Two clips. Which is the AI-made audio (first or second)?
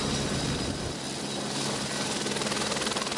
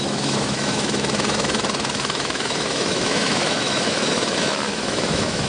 second